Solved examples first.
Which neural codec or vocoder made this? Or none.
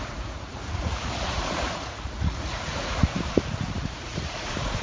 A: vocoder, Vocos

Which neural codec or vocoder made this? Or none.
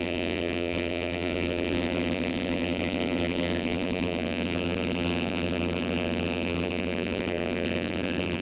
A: vocoder, BigVGAN v2